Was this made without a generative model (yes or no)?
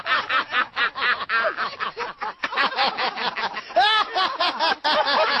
yes